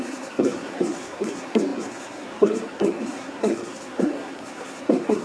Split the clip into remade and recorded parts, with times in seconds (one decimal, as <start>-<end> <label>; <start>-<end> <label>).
0.0-5.2 remade